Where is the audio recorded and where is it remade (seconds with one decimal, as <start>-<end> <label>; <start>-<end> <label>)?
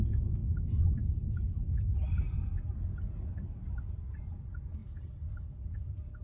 0.0-6.2 recorded